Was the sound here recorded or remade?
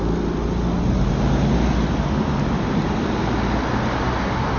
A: recorded